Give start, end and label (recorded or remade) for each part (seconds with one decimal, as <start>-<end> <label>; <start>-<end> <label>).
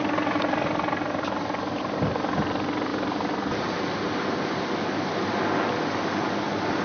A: 0.0-6.8 recorded